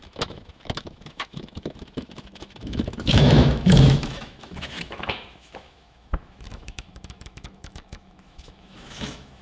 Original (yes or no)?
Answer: no